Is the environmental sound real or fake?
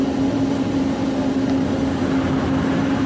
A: real